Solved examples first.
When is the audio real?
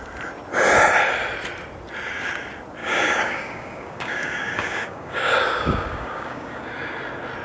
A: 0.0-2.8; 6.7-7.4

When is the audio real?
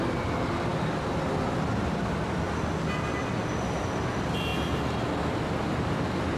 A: 0.0-6.4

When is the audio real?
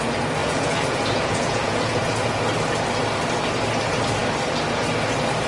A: 0.0-0.4; 2.4-5.5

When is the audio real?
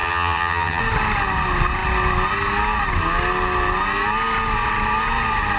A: 0.8-5.6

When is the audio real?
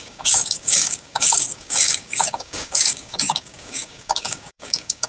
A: none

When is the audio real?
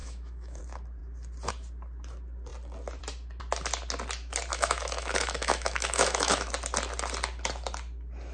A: 0.6-4.5; 6.5-8.3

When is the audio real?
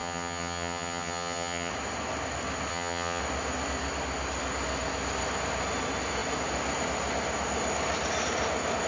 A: 1.7-2.7; 3.2-8.9